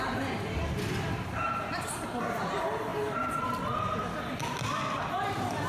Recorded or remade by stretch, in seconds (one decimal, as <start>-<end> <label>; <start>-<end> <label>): 0.0-5.7 recorded